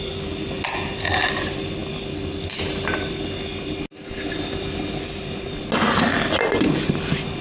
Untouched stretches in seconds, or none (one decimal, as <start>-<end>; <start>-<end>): 0.0-7.4